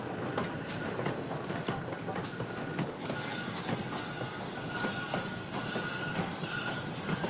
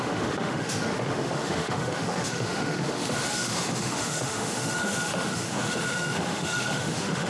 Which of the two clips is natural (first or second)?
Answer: first